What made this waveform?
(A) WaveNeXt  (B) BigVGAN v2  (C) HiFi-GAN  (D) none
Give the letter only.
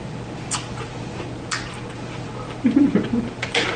D